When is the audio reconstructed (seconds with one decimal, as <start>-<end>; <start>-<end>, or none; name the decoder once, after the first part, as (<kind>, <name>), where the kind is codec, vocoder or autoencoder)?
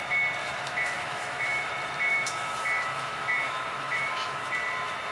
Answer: 0.4-1.7 (autoencoder, DAC-VAE); 2.1-4.5